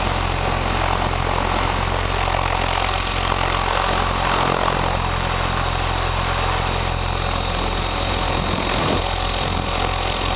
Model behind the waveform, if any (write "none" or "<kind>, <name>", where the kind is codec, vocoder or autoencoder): none